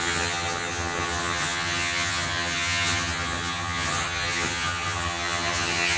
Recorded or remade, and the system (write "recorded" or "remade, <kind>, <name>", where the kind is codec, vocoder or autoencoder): remade, vocoder, HiFi-GAN